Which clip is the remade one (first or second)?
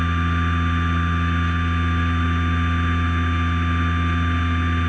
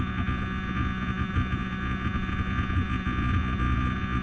second